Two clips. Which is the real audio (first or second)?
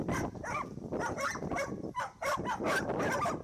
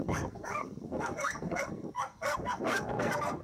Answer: first